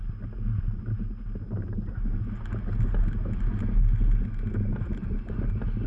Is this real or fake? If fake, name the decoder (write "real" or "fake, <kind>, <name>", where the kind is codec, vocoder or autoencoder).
real